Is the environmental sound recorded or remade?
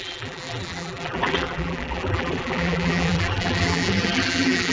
remade